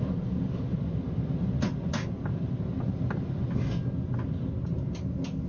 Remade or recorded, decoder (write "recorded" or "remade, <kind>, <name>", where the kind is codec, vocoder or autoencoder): recorded